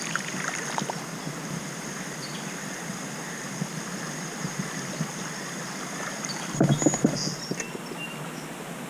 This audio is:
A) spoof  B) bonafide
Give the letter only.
B